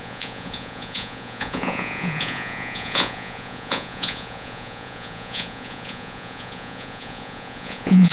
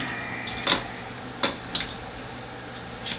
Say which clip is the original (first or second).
second